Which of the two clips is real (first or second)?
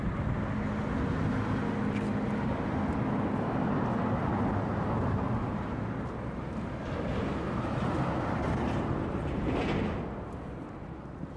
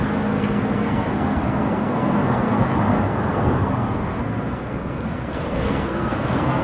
first